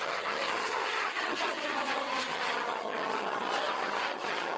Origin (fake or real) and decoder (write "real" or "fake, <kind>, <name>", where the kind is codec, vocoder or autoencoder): fake, vocoder, HiFi-GAN